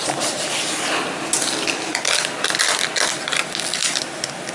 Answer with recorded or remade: recorded